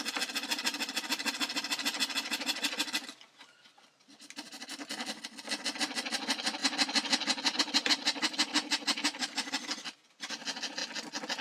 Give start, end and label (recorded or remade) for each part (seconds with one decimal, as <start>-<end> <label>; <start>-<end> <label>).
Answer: 0.0-11.4 recorded

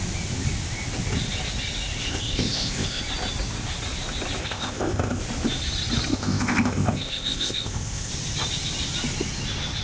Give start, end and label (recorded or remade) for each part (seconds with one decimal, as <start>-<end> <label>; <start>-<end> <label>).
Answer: 0.0-2.0 recorded; 2.0-3.0 remade; 3.0-4.4 recorded; 4.4-5.2 remade; 5.2-6.1 recorded; 6.1-8.1 remade; 8.1-9.8 recorded

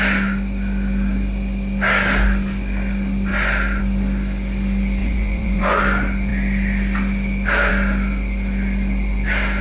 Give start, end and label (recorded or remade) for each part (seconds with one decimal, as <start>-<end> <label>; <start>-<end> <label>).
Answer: 0.0-5.0 recorded; 5.0-5.8 remade; 5.8-9.6 recorded

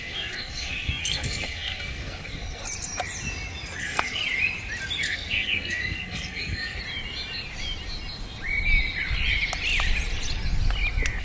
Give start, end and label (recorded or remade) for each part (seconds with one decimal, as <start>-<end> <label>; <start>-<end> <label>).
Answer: 0.0-2.6 remade; 2.6-3.8 recorded; 3.8-4.2 remade; 4.2-5.0 recorded; 5.0-6.8 remade; 6.8-11.2 recorded

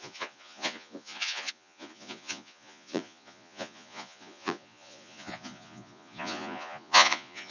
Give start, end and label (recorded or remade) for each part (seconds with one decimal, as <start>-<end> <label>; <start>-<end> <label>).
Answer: 0.0-7.5 remade

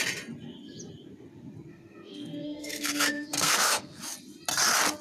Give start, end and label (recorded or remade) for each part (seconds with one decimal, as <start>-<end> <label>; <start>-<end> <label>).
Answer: 0.0-1.7 recorded; 1.7-4.0 remade; 4.0-5.0 recorded

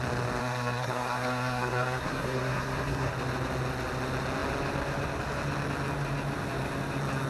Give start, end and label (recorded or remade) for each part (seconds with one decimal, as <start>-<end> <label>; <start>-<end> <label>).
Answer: 0.0-0.4 recorded; 0.4-3.1 remade; 3.1-7.3 recorded